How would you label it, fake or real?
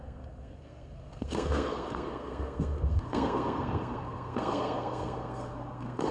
fake